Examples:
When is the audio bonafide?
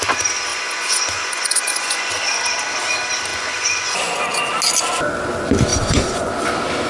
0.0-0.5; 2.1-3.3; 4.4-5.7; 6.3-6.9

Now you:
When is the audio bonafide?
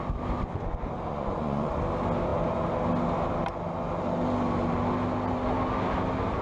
0.0-1.1; 1.7-6.4